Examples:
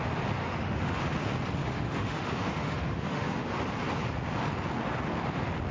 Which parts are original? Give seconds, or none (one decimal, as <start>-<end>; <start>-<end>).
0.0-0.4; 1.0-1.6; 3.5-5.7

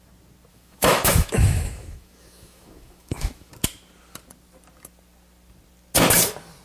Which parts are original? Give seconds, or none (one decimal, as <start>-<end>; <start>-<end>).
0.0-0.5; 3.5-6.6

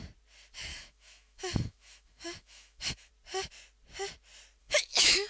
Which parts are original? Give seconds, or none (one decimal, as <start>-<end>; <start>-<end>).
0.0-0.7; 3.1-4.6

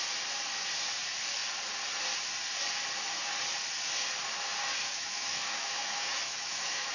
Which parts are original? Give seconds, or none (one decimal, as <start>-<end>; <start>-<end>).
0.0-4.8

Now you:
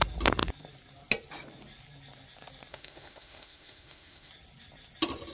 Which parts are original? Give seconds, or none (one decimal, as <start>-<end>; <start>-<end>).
0.0-2.7; 4.3-5.3

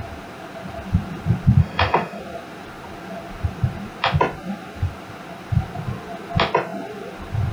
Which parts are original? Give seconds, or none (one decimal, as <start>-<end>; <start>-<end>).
0.0-1.6; 2.2-7.5

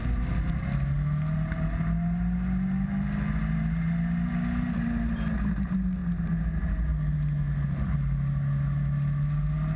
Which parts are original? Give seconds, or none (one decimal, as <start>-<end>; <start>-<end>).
0.0-9.8